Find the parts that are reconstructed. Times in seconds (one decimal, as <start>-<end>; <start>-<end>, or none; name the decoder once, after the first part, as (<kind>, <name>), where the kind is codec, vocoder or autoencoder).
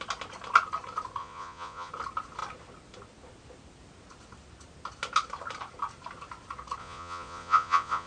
1.2-1.9 (vocoder, Vocos); 6.8-8.1